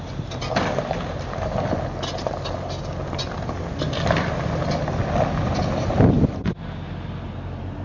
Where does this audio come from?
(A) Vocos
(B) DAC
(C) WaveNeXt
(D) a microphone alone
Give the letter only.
D